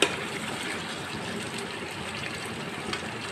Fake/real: real